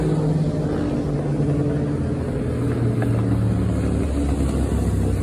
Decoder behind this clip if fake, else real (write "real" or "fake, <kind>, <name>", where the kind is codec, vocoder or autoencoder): real